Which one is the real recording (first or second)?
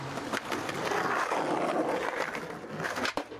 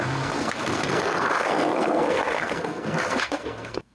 first